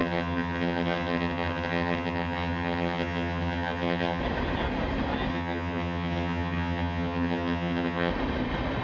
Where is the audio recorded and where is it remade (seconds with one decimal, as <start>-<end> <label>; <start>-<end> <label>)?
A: 0.0-4.2 remade; 4.2-5.3 recorded; 5.3-8.1 remade; 8.1-8.8 recorded